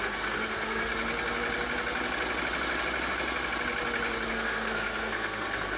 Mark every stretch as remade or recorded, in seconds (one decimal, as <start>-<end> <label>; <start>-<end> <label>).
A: 0.0-0.9 remade; 0.9-4.3 recorded; 4.3-5.8 remade

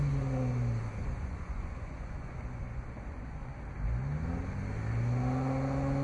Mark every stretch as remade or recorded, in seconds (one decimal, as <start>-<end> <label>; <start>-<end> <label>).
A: 0.0-1.0 recorded; 1.0-3.5 remade; 3.5-6.0 recorded